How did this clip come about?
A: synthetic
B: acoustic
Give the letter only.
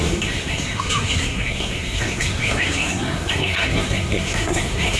A